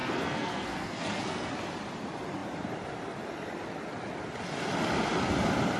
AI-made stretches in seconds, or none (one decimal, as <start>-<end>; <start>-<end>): 0.0-1.5